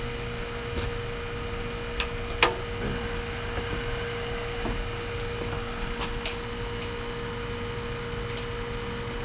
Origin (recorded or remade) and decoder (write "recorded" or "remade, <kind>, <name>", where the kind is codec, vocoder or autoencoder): recorded